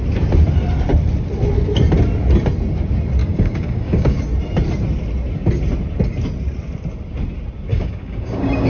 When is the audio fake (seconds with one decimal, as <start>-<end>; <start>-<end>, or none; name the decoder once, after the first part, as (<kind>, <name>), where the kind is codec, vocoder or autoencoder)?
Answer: 3.2-4.2 (codec, DAC); 7.7-8.7